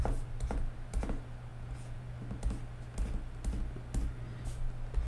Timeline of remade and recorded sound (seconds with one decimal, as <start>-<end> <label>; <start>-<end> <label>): 0.0-1.5 recorded; 1.5-2.1 remade; 2.1-5.1 recorded